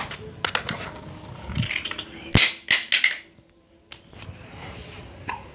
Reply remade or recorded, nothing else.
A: recorded